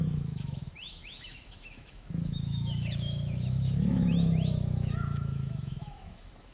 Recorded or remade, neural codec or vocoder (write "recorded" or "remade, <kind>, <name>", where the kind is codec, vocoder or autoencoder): remade, autoencoder, DAC-VAE